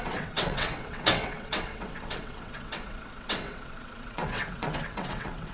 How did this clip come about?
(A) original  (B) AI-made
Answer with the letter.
B